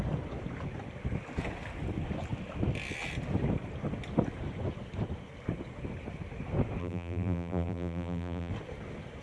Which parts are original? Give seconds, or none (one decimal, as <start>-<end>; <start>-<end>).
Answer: 0.0-6.8; 8.5-9.2